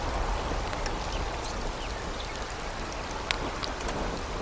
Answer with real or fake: real